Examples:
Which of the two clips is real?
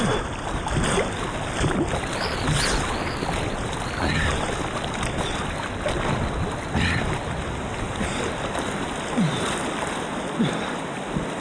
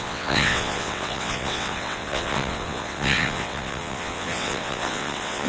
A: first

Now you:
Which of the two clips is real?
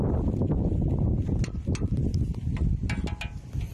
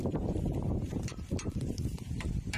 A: first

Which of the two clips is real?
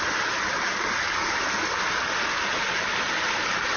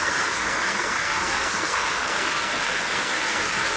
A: first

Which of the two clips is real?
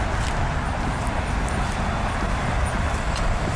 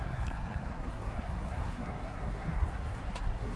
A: first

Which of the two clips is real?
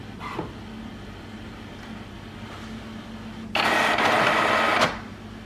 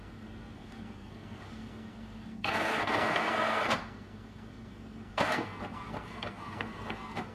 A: first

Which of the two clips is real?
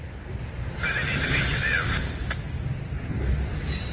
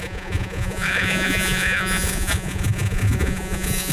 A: first